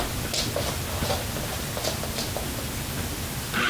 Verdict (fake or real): real